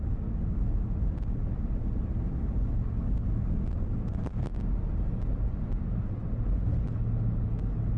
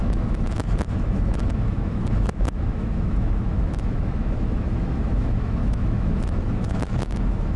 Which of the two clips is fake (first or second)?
second